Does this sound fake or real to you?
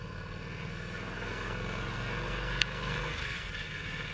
fake